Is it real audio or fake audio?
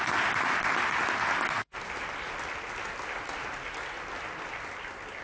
real